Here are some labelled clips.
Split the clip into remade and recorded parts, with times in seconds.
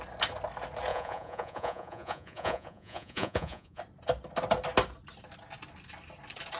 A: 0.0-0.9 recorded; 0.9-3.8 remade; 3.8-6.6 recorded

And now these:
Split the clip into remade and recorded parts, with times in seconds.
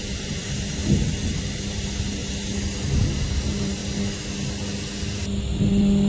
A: 0.0-0.8 remade; 0.8-1.6 recorded; 1.6-2.2 remade; 2.2-3.1 recorded; 3.1-3.8 remade; 3.8-6.1 recorded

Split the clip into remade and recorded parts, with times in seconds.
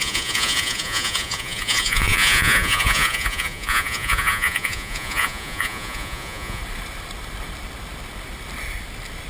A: 0.0-6.6 remade; 6.6-9.3 recorded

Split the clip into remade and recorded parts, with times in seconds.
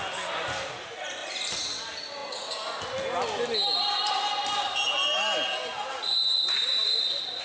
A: 0.0-7.4 recorded